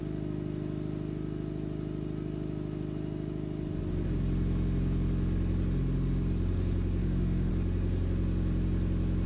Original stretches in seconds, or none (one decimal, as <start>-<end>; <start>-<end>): 0.0-7.0; 7.5-9.3

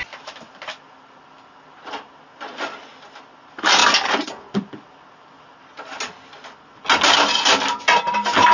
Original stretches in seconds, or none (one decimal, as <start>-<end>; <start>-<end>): 0.0-8.5

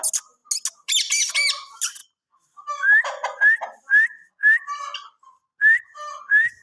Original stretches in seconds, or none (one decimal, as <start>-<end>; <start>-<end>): 0.0-6.6

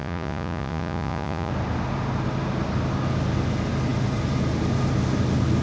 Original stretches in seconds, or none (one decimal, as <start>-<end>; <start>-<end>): 1.5-5.6

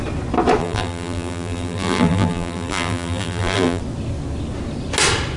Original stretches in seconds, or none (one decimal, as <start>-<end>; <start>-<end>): 0.0-0.6; 3.8-5.4

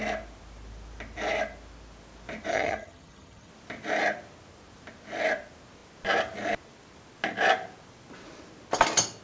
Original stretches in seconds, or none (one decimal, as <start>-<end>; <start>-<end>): 0.0-2.5; 3.5-9.2

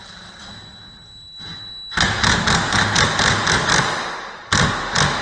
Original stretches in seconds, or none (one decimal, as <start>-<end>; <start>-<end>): 0.0-5.2

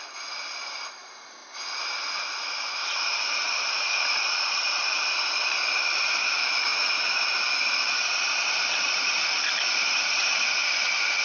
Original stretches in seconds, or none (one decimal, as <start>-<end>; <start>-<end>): 0.0-11.2